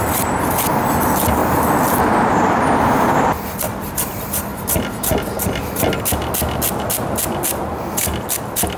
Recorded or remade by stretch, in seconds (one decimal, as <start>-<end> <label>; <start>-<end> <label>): 0.0-8.8 remade